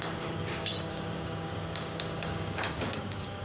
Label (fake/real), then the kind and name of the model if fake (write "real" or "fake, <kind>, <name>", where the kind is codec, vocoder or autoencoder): fake, codec, DAC